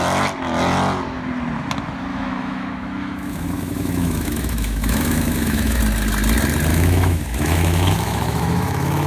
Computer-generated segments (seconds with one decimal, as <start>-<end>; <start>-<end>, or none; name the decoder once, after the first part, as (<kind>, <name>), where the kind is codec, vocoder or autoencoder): 2.1-5.8 (autoencoder, DAC-VAE); 6.7-9.1